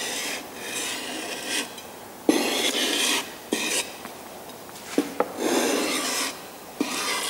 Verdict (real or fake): real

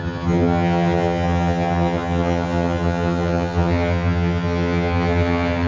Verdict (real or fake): fake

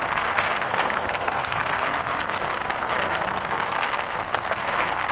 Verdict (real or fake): fake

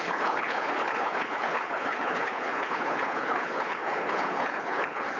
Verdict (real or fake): fake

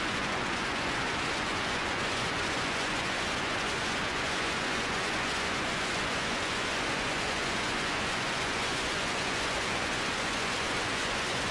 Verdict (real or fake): fake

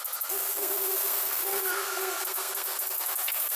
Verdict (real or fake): fake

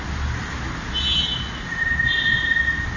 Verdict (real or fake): real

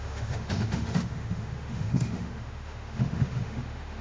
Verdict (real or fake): fake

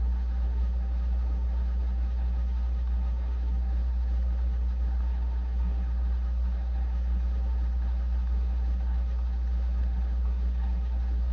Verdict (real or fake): fake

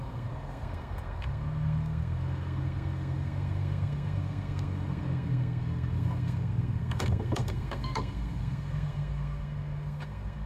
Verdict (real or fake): fake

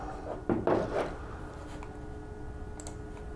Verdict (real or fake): real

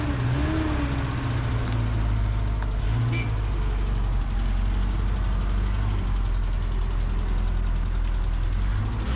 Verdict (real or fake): real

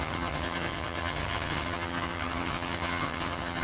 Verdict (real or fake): fake